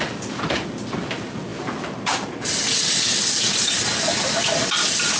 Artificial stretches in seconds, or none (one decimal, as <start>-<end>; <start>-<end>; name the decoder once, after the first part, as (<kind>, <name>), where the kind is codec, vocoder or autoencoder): none